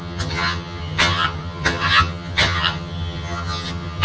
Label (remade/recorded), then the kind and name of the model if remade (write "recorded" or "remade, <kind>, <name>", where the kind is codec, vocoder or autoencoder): remade, vocoder, HiFi-GAN